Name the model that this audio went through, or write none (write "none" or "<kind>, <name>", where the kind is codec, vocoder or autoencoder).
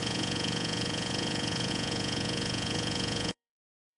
vocoder, Vocos